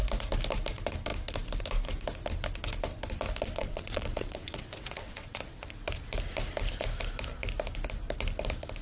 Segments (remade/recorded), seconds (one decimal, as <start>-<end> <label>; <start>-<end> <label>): 0.0-3.6 recorded; 3.6-5.4 remade; 5.4-8.8 recorded